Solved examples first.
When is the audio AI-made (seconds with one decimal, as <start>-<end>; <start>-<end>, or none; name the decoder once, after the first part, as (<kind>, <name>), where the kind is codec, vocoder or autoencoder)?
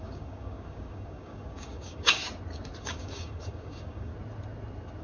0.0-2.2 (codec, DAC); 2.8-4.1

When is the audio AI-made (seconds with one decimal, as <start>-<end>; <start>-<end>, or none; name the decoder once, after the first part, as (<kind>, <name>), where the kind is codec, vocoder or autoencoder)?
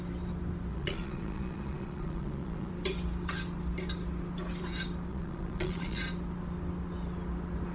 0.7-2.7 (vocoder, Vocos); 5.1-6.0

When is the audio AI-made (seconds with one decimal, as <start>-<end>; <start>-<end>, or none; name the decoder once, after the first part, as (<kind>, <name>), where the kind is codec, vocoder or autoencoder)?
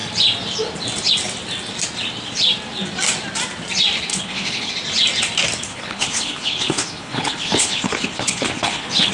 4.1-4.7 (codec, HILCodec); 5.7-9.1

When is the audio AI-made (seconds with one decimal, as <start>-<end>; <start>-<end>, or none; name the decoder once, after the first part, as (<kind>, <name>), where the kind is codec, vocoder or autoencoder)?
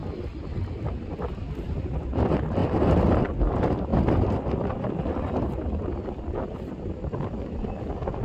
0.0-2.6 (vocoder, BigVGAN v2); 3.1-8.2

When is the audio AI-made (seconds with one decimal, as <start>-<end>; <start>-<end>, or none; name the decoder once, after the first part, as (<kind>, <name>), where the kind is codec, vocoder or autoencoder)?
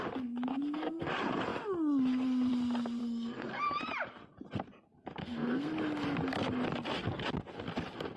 0.5-1.1 (codec, SNAC); 3.0-3.6; 5.2-5.7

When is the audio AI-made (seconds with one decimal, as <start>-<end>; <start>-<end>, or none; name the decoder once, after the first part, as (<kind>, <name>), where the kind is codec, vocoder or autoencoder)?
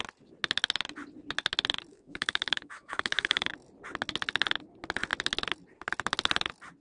1.9-3.5 (autoencoder, DAC-VAE)